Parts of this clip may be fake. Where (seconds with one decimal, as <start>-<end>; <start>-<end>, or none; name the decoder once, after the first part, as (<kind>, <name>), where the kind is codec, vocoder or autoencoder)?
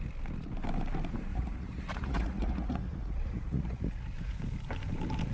1.3-4.4 (vocoder, Vocos)